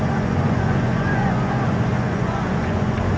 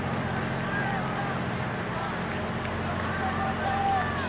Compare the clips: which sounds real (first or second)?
second